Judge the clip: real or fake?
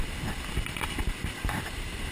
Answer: real